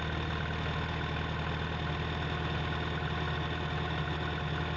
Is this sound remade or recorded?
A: recorded